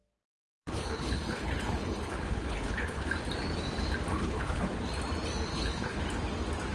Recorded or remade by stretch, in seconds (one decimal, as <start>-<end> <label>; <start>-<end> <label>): 0.0-0.6 recorded; 0.6-3.1 remade; 3.1-4.1 recorded; 4.1-4.6 remade; 4.6-5.5 recorded; 5.5-6.0 remade; 6.0-6.7 recorded